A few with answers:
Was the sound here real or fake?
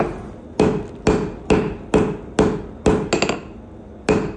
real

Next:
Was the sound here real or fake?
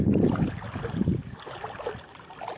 real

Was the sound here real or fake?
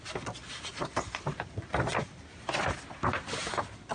real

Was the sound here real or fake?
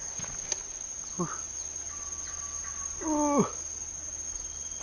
real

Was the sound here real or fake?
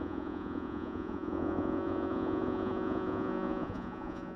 fake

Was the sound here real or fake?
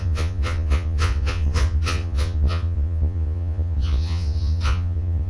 fake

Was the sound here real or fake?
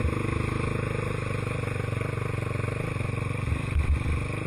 real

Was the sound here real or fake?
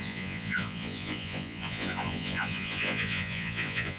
fake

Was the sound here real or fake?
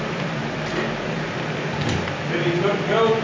real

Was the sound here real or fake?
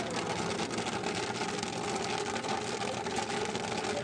real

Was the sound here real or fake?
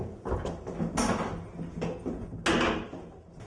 real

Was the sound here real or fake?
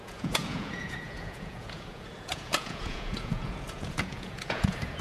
fake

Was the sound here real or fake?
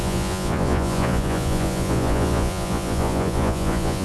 fake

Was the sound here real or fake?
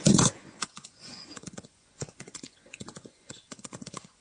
fake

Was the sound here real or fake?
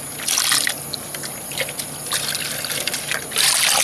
real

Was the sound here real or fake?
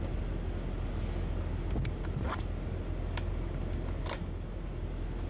real